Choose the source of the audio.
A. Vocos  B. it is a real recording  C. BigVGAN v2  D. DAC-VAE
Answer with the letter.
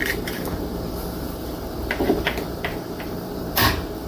C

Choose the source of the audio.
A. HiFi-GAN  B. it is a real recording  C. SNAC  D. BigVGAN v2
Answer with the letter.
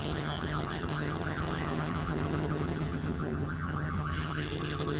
A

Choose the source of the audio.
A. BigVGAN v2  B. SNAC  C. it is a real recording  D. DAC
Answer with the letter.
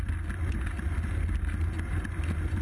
C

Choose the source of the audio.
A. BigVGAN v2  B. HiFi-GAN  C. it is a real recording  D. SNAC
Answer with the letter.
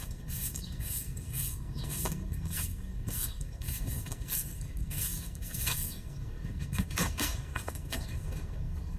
D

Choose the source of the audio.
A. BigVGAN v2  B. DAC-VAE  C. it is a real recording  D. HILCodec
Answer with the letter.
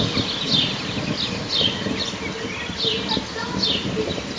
C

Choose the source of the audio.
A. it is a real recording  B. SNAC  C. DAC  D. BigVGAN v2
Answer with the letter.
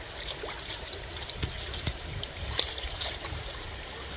D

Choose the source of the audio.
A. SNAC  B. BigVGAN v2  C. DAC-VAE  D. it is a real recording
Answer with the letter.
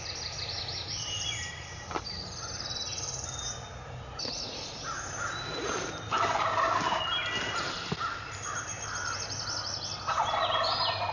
D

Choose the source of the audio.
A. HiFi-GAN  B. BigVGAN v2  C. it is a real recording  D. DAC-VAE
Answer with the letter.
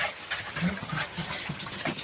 A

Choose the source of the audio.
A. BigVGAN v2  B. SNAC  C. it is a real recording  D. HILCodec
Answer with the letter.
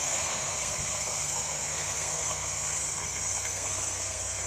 B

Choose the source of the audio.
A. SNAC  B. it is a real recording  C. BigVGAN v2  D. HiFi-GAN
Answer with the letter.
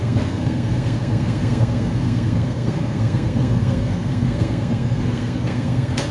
A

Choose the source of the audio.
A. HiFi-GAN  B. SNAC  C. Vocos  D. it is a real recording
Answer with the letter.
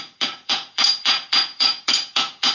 C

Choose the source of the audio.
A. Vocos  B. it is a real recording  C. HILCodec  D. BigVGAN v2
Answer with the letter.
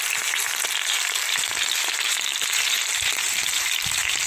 D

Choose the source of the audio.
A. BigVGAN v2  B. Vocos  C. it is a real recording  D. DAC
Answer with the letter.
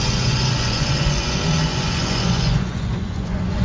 B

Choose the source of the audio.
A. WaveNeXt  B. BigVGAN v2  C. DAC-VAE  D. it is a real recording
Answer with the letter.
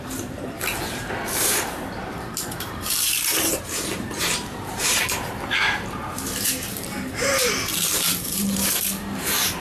B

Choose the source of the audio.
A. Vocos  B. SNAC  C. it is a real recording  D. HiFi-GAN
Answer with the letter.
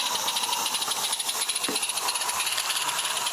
C